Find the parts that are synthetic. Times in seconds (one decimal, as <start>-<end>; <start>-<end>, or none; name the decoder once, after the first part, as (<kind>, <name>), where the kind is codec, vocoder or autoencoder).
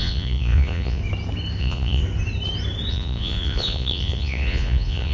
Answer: 0.0-1.0 (vocoder, Vocos); 1.6-2.0; 2.9-5.1